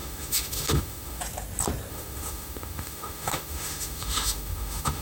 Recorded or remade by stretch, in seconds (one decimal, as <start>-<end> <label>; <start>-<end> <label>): 0.0-1.2 remade; 1.2-1.9 recorded; 1.9-5.0 remade